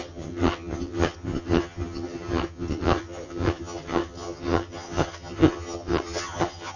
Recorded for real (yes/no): no